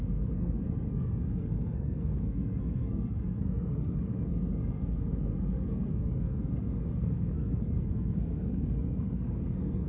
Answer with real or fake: fake